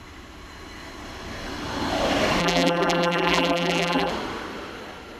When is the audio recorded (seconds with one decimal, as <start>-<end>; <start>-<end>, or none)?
0.0-2.4; 4.1-5.2